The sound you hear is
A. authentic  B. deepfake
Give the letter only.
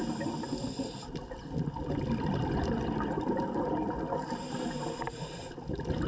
A